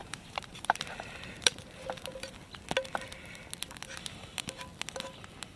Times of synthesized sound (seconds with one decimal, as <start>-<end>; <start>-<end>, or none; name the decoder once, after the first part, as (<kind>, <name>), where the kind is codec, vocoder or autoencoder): 0.0-2.3 (vocoder, BigVGAN v2)